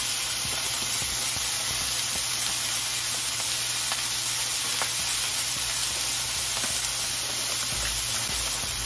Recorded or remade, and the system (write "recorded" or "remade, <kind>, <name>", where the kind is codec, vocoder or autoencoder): recorded